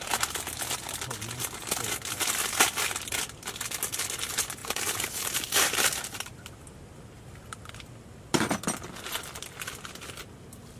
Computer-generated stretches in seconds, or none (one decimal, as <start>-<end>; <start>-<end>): 4.6-7.0